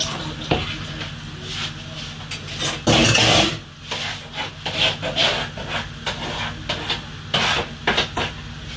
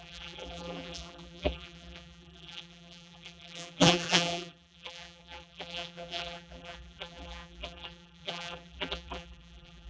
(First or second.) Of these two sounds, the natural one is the first